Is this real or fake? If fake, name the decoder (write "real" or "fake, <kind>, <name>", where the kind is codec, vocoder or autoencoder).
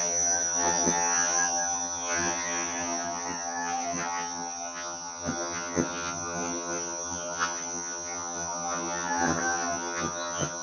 fake, vocoder, HiFi-GAN